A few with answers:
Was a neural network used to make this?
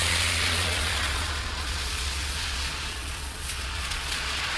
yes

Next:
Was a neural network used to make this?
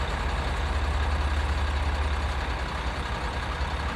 no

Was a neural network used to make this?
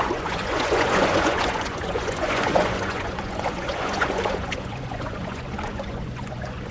yes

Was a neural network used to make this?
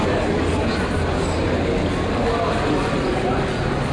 no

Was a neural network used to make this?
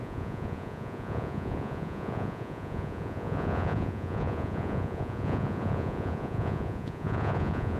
yes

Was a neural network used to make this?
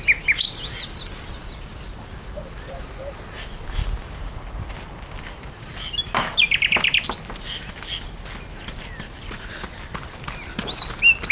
no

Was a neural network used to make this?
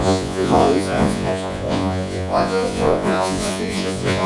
yes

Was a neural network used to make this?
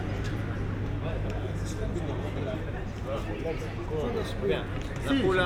no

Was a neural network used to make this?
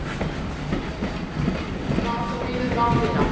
no